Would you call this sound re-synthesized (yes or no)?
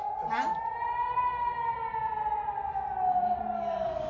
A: no